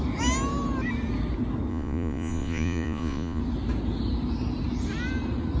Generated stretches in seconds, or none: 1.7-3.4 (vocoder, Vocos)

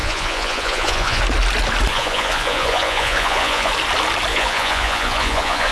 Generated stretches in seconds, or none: 0.0-1.2 (vocoder, Vocos); 1.9-3.7; 4.3-5.7

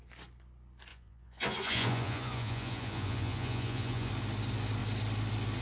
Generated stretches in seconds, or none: 0.9-4.1 (vocoder, Vocos)

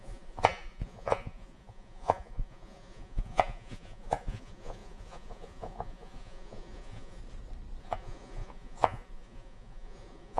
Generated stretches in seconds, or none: 0.0-7.2 (vocoder, Vocos); 7.8-10.4

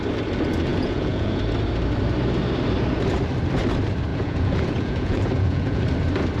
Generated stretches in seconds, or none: 0.7-1.4 (vocoder, Vocos); 4.1-5.8

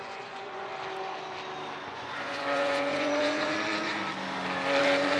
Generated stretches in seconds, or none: 0.0-0.7 (vocoder, Vocos); 1.9-4.0; 4.8-5.2

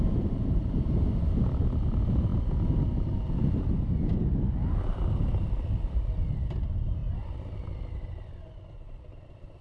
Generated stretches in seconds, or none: none

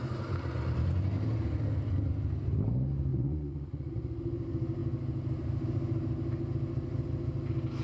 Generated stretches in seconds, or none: 3.1-3.9 (vocoder, Vocos)